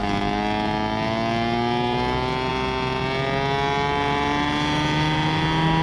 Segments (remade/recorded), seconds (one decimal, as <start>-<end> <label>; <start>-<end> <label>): 0.0-5.8 recorded